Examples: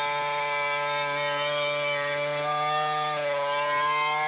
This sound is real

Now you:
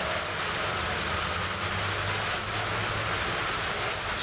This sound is real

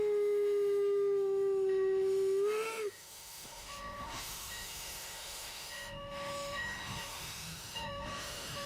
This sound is fake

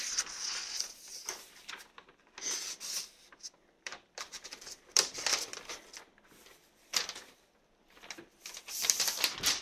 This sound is fake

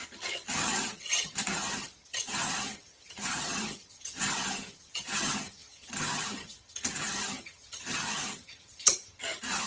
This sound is fake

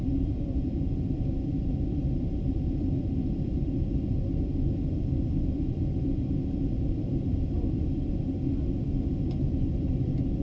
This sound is fake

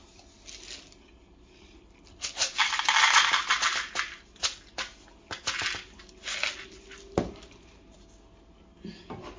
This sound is real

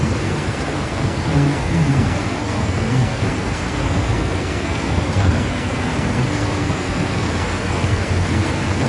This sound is fake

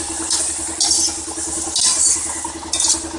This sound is real